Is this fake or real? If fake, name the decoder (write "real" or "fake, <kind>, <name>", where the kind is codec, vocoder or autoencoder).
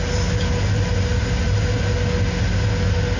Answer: real